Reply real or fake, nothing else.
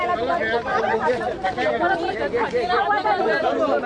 real